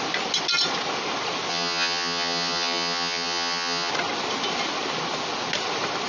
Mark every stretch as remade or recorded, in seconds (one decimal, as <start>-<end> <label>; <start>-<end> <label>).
0.0-1.5 recorded; 1.5-3.9 remade; 3.9-6.1 recorded

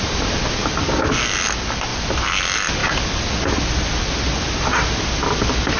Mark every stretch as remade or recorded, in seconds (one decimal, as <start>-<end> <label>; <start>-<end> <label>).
0.0-5.8 recorded

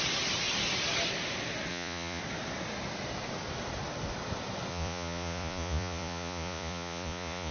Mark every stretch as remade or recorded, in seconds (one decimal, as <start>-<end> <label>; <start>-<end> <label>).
0.0-1.7 recorded; 1.7-2.2 remade; 2.2-4.7 recorded; 4.7-7.5 remade

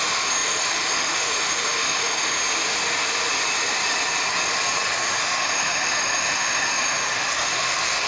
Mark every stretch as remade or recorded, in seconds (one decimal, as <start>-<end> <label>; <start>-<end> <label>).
0.0-2.4 remade; 2.4-5.2 recorded; 5.2-8.1 remade

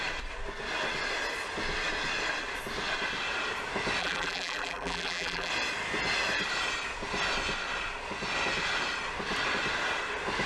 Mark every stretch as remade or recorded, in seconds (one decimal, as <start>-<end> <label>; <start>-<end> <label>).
0.0-4.0 recorded; 4.0-5.5 remade; 5.5-10.5 recorded

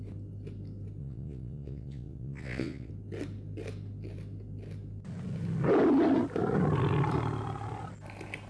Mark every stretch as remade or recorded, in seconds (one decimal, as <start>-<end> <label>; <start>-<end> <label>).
0.0-1.0 recorded; 1.0-2.9 remade; 2.9-8.5 recorded

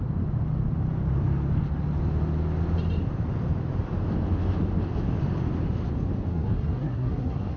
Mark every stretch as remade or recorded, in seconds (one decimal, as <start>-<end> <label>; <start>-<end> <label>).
0.0-6.3 recorded; 6.3-7.6 remade

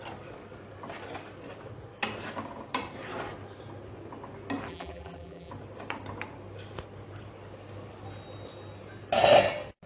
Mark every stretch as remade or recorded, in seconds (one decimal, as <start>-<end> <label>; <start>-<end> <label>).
0.0-4.7 recorded; 4.7-5.5 remade; 5.5-9.9 recorded